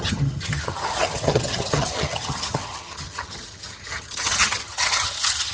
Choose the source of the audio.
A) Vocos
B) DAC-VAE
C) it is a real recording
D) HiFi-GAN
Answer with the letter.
D